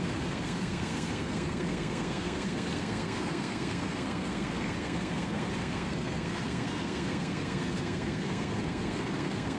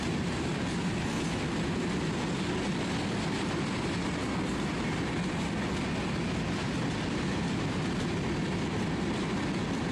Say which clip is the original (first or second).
second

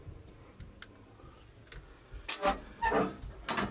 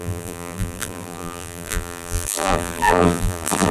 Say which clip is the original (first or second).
first